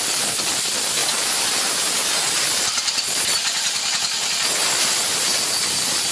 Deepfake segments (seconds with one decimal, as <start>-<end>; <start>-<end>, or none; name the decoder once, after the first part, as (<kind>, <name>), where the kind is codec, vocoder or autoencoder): 0.0-6.1 (vocoder, BigVGAN v2)